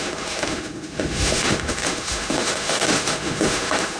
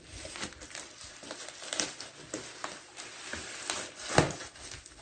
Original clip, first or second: second